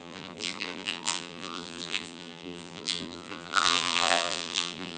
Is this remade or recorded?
remade